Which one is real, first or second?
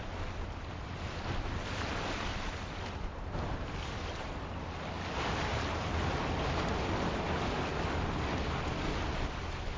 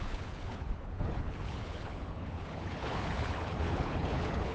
first